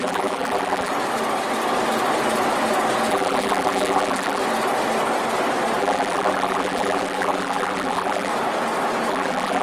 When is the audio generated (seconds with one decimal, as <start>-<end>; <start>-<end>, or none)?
0.0-0.9; 3.1-4.4; 5.8-8.3; 9.1-9.6